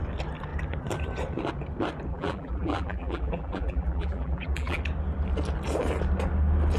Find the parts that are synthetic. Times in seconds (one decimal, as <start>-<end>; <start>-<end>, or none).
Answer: 2.1-4.8